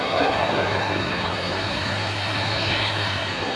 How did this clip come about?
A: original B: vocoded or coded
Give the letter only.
B